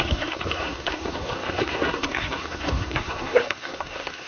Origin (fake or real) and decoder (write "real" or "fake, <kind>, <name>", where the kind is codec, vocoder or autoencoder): fake, codec, SNAC